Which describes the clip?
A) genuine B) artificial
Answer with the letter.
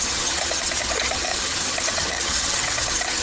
B